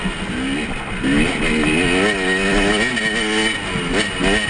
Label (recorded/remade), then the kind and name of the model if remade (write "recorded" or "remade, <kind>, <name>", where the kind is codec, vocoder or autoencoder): recorded